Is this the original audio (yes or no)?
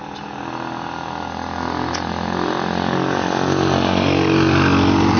yes